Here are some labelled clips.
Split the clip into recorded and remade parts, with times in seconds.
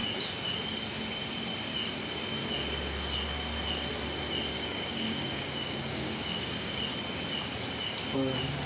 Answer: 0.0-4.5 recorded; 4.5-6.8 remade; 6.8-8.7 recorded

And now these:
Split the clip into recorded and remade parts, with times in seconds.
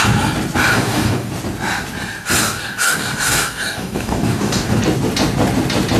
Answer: 0.0-0.7 recorded; 0.7-1.3 remade; 1.3-2.4 recorded; 2.4-4.8 remade; 4.8-6.0 recorded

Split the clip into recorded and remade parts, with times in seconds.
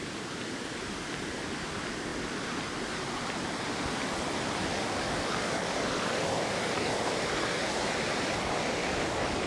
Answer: 0.0-4.7 recorded; 4.7-6.9 remade; 6.9-8.8 recorded; 8.8-9.5 remade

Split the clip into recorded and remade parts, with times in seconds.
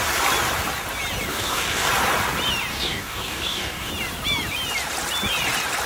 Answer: 0.0-1.3 recorded; 1.3-1.9 remade; 1.9-2.7 recorded; 2.7-3.9 remade; 3.9-5.9 recorded